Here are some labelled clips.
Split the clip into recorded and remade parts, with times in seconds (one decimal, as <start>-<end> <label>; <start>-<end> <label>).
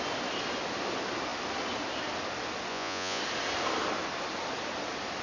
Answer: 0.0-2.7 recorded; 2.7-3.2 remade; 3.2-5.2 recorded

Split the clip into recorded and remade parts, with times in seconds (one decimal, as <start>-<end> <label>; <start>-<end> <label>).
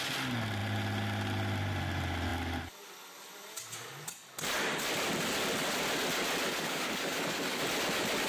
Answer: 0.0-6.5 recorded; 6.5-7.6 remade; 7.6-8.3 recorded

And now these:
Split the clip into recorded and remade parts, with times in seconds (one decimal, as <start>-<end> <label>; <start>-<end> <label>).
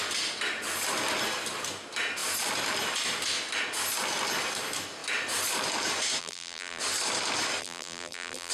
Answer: 0.0-6.2 recorded; 6.2-6.8 remade; 6.8-7.6 recorded; 7.6-8.5 remade